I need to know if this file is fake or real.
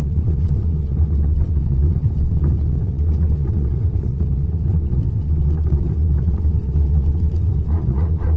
fake